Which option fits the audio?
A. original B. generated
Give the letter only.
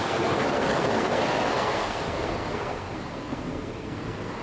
B